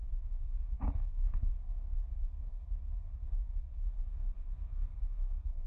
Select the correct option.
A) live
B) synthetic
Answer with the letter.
B